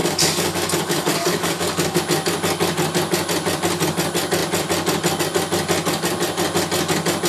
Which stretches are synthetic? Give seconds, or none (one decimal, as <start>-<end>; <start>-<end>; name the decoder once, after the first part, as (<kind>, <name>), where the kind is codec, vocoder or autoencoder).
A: 0.0-2.0 (codec, DAC)